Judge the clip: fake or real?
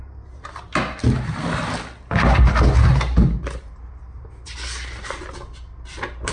real